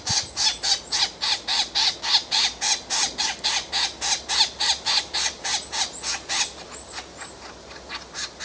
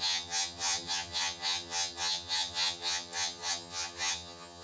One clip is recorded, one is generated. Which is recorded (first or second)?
first